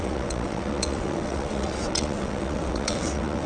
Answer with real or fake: fake